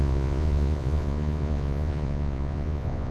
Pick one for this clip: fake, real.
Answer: fake